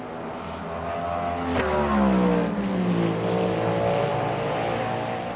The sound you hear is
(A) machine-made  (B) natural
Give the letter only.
B